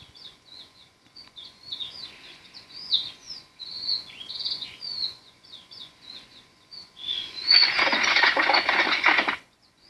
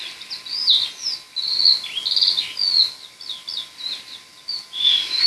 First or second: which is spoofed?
first